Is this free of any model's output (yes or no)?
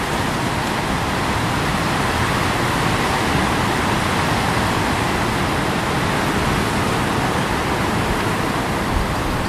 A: yes